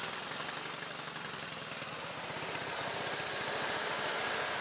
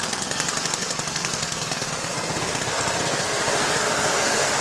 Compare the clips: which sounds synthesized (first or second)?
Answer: second